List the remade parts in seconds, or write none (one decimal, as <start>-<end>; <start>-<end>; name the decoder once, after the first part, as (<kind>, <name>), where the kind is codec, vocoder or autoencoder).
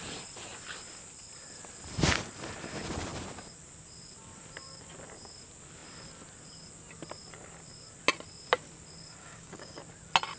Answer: 9.2-9.8 (codec, DAC)